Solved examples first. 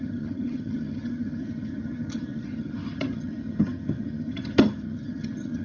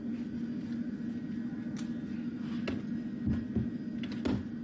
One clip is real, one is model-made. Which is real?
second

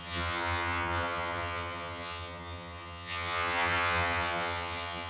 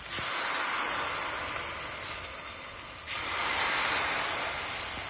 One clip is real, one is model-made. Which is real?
second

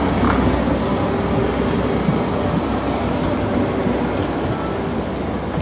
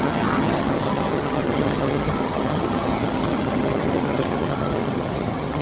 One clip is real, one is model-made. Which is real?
first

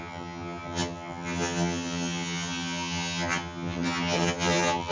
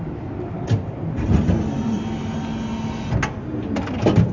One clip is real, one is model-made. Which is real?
second